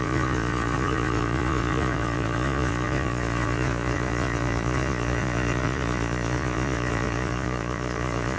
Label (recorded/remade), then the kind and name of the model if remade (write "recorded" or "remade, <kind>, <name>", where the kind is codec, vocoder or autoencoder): remade, vocoder, Vocos